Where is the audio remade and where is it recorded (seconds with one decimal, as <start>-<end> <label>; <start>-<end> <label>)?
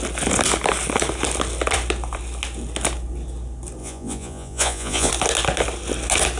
0.0-3.8 recorded; 3.8-5.1 remade; 5.1-6.4 recorded